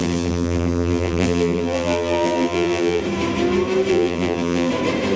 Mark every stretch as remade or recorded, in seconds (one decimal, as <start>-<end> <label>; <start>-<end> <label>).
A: 0.0-3.0 remade; 3.0-3.9 recorded; 3.9-4.7 remade; 4.7-5.2 recorded